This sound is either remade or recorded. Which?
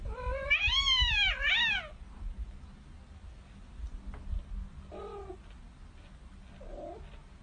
recorded